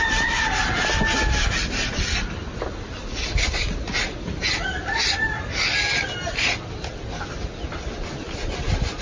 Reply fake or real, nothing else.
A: real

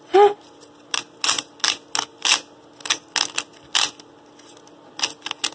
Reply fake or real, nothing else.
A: real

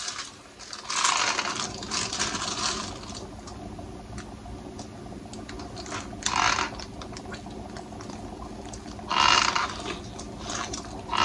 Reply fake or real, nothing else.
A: real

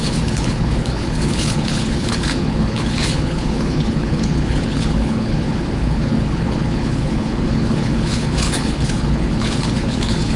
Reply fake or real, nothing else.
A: fake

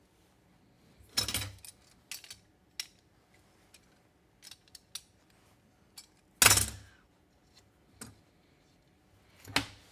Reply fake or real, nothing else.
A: real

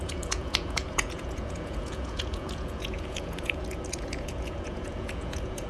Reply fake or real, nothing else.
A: fake